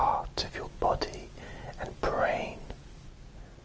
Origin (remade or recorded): recorded